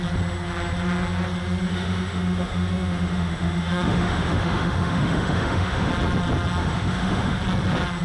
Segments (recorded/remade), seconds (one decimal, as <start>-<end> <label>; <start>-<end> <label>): 0.0-1.7 recorded; 1.7-5.9 remade; 5.9-6.6 recorded; 6.6-7.4 remade; 7.4-8.0 recorded